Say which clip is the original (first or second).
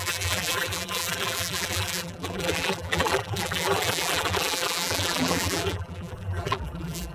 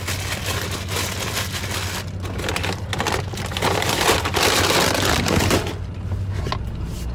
second